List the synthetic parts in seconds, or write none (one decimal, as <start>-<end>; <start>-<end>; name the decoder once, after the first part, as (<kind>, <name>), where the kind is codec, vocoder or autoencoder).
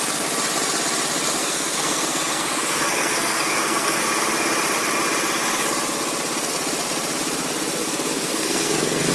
1.4-4.0 (codec, SNAC); 7.8-9.1